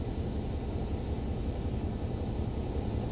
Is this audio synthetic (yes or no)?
no